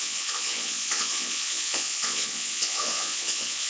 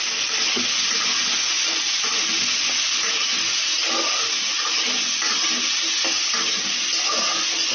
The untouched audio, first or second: second